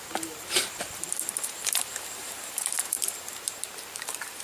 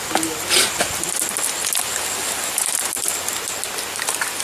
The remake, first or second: first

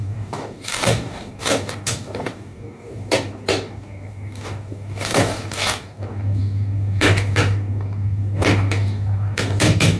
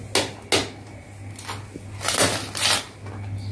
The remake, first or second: first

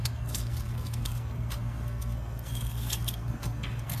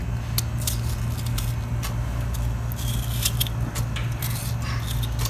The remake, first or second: first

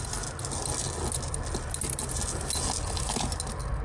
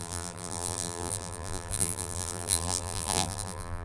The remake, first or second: second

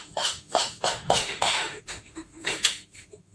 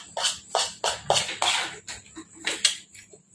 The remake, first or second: first